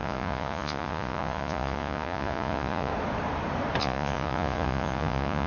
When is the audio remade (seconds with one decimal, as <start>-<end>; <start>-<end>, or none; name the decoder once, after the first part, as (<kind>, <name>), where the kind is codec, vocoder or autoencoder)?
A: 0.0-2.9 (vocoder, Vocos); 3.8-5.5